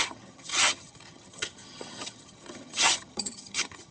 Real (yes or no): no